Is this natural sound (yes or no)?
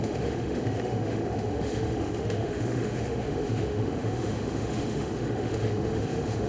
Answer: no